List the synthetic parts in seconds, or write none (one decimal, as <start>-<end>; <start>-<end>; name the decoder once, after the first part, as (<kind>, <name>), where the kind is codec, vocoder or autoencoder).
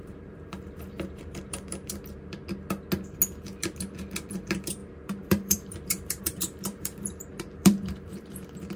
0.0-2.4 (vocoder, BigVGAN v2); 4.3-8.8